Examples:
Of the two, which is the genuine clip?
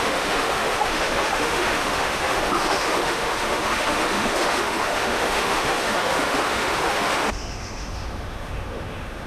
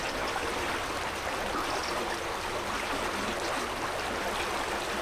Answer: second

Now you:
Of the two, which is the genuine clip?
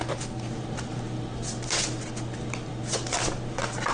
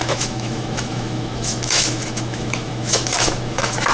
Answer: first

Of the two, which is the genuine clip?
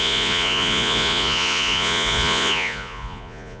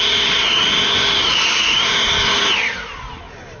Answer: second